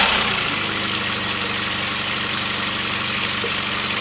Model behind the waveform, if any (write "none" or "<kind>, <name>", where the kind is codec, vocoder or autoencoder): none